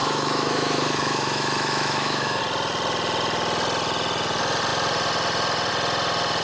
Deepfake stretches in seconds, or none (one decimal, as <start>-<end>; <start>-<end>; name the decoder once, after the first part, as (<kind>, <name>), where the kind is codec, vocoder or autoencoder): 0.0-2.4 (autoencoder, DAC-VAE)